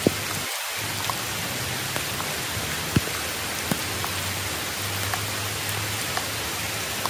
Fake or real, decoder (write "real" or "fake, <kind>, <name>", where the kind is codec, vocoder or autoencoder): real